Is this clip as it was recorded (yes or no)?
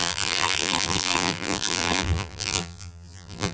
no